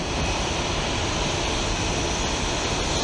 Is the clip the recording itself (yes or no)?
yes